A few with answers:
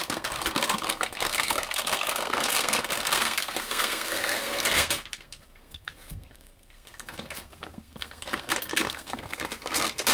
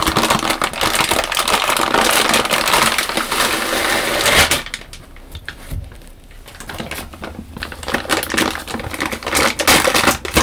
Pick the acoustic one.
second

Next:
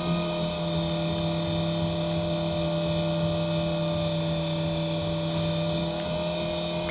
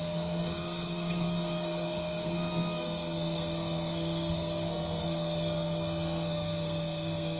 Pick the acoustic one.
first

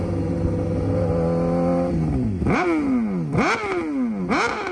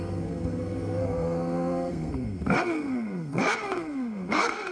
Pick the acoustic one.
first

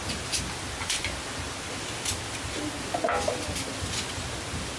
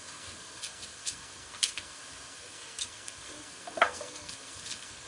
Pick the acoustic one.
first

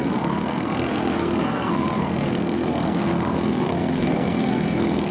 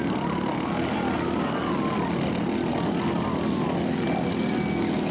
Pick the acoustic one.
second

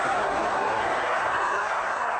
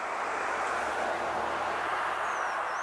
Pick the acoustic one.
second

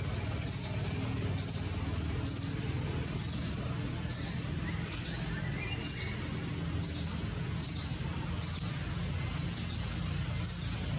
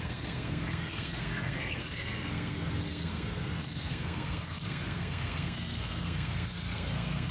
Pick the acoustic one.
first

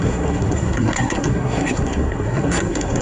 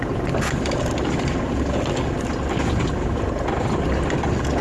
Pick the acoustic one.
second